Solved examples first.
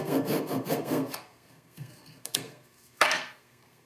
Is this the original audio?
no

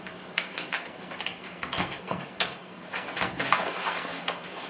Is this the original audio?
no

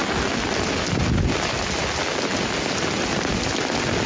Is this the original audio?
yes